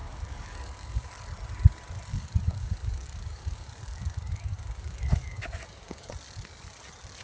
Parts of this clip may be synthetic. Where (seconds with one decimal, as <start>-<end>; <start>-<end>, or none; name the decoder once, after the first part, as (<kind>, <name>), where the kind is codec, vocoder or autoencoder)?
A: 0.0-1.1 (codec, DAC); 2.1-6.1